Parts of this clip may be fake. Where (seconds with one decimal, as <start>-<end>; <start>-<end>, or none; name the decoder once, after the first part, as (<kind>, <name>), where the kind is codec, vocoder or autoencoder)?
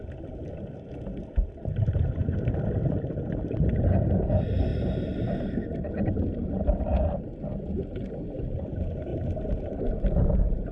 0.0-4.7 (vocoder, BigVGAN v2); 5.4-6.9; 8.4-10.7